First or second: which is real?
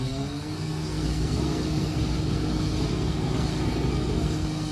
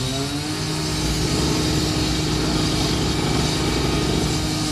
second